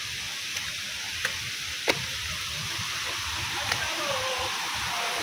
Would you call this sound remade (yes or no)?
yes